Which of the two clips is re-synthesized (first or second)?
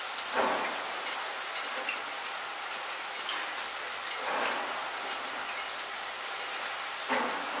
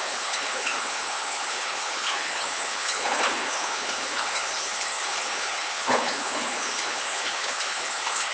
second